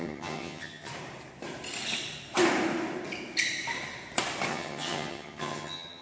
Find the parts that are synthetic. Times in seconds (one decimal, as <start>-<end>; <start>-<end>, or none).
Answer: 0.0-0.9; 4.5-6.0